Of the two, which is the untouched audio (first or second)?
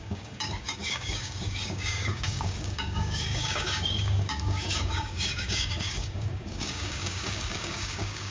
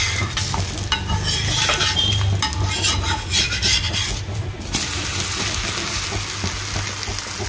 second